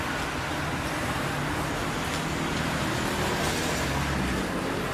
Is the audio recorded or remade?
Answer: recorded